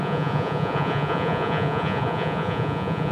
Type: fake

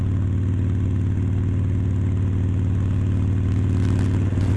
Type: real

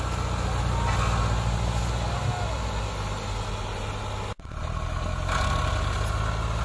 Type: real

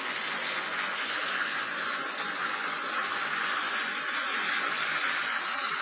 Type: fake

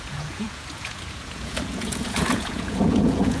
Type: fake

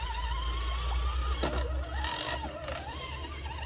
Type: real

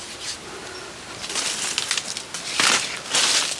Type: real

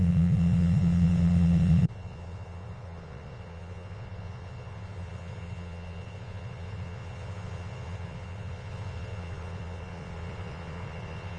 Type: fake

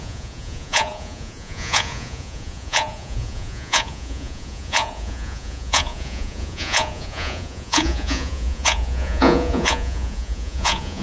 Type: fake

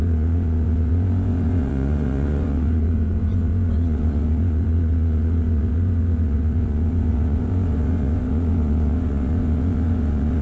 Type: fake